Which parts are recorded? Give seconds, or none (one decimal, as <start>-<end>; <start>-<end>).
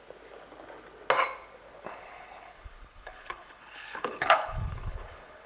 0.0-1.9